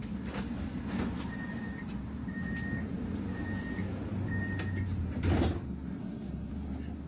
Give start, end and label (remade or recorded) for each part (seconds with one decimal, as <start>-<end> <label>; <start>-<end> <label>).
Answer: 0.0-6.0 recorded; 6.0-6.5 remade; 6.5-7.1 recorded